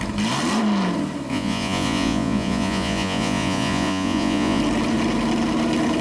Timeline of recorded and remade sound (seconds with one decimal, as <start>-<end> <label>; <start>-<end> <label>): 0.0-1.3 recorded; 1.3-4.6 remade; 4.6-6.0 recorded